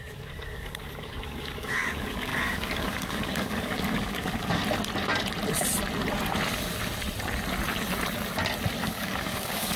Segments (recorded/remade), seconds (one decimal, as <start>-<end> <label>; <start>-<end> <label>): 0.0-4.6 remade; 4.6-8.8 recorded; 8.8-9.8 remade